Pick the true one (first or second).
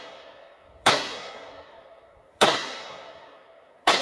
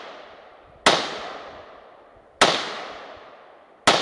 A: second